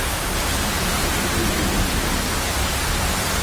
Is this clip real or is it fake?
real